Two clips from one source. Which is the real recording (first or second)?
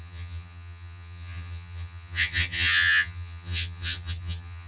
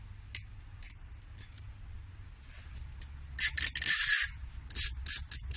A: second